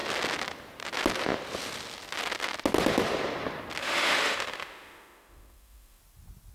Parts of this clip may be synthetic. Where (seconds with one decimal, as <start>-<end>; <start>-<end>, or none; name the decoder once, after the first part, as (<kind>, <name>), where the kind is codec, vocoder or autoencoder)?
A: 3.8-6.0 (autoencoder, DAC-VAE)